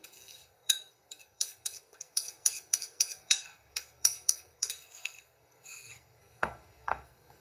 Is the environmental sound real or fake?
fake